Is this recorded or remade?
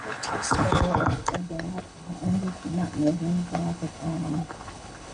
remade